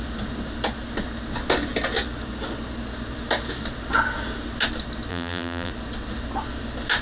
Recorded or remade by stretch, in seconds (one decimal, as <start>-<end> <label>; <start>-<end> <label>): 0.0-5.1 recorded; 5.1-5.7 remade; 5.7-7.0 recorded